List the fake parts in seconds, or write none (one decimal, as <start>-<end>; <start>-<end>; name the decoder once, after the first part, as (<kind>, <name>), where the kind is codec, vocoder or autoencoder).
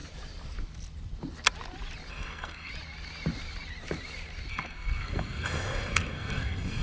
2.1-2.7 (codec, SNAC); 4.5-6.8